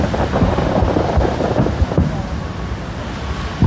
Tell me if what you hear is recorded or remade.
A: recorded